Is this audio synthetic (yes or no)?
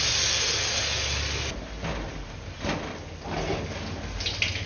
no